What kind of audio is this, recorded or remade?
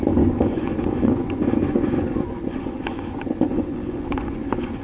remade